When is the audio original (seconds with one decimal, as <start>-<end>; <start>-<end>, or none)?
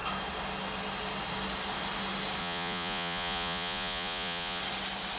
0.0-2.4; 4.6-5.2